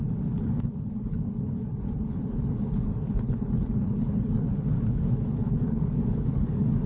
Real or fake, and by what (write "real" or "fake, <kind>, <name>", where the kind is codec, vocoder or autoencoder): fake, codec, HILCodec